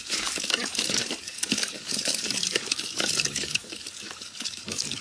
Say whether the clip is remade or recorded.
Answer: remade